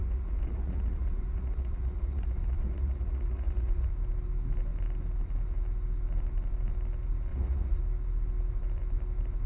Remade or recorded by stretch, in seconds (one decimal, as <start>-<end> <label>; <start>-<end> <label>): 0.0-3.9 remade; 3.9-7.3 recorded; 7.3-7.8 remade; 7.8-9.5 recorded